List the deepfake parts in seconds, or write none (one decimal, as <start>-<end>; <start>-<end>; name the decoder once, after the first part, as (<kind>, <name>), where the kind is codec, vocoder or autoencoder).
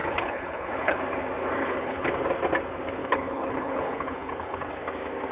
0.0-1.0 (codec, HILCodec); 1.6-2.1; 3.0-4.7